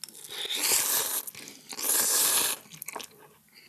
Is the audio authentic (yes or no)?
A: yes